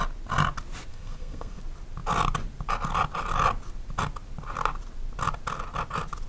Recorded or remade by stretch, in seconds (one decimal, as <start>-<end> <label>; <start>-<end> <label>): 0.0-0.9 recorded; 0.9-1.6 remade; 1.6-6.3 recorded